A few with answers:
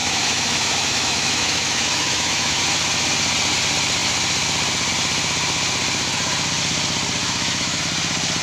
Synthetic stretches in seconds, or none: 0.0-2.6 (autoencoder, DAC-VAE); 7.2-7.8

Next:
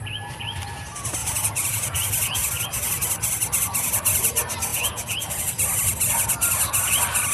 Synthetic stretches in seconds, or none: 1.2-2.5 (vocoder, Vocos); 4.7-5.5